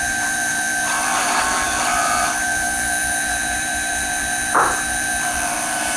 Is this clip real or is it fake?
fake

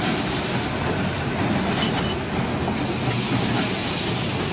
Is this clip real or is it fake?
real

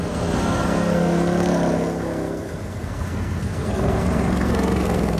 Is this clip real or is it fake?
fake